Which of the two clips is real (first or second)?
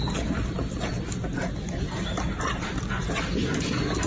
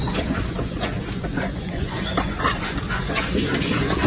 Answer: first